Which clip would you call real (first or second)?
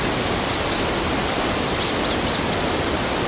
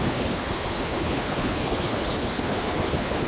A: first